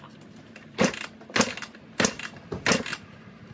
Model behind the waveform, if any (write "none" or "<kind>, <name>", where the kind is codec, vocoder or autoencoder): none